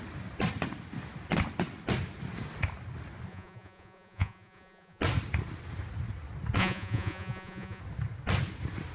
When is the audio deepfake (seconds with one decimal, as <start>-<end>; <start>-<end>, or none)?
3.3-5.0; 6.6-7.8